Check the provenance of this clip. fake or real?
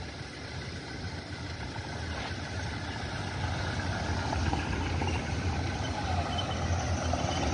real